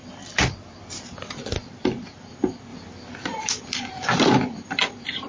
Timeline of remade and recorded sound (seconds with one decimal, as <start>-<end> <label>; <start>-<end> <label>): 0.0-5.3 recorded